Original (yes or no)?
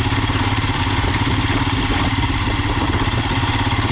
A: no